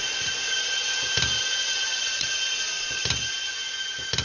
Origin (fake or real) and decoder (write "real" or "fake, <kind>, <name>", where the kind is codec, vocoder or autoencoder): real